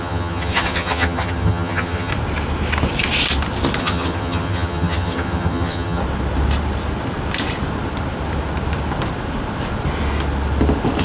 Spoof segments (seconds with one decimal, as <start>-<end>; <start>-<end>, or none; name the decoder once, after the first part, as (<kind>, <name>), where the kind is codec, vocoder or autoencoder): 0.0-2.1 (vocoder, HiFi-GAN); 3.8-6.0